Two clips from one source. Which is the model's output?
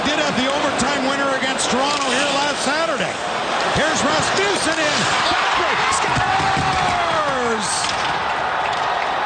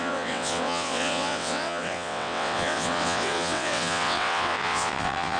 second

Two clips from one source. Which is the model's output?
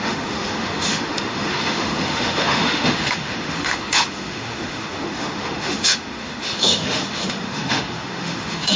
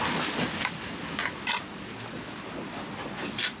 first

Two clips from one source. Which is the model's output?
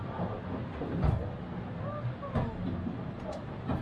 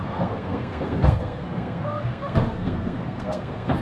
second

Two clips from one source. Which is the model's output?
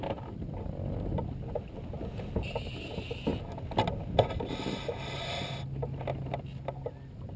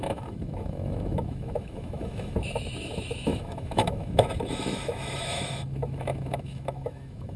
second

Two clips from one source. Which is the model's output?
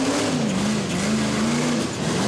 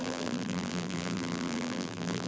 second